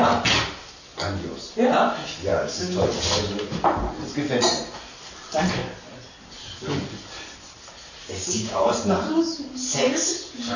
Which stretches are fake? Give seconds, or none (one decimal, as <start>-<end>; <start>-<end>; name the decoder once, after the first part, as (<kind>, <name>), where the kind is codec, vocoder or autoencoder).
2.3-2.8 (codec, DAC); 8.0-8.7